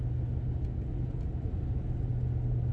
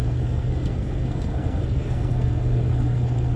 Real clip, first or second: first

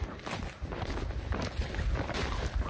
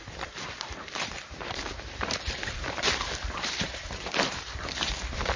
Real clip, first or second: first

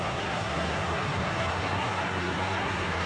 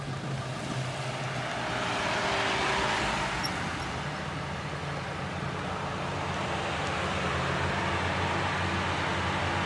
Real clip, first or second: second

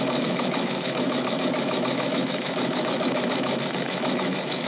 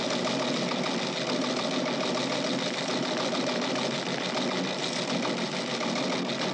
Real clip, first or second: second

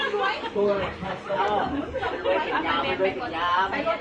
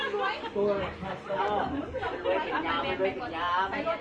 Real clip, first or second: second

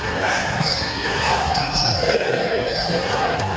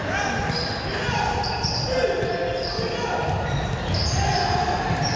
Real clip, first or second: second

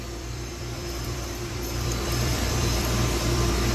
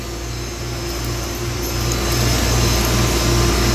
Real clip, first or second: second